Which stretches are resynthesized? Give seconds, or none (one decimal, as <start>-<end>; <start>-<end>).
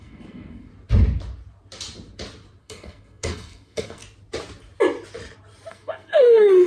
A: 0.0-0.7; 2.6-4.0; 5.7-6.7